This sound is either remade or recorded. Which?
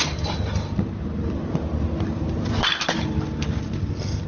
recorded